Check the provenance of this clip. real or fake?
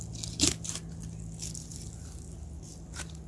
real